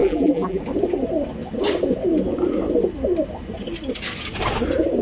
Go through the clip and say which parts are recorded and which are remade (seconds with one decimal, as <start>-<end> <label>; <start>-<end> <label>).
0.0-0.6 remade; 0.6-5.0 recorded